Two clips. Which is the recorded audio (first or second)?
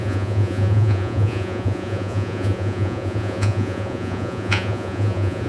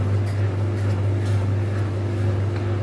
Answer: second